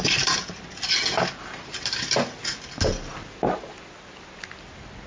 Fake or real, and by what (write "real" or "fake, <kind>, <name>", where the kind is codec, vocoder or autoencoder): real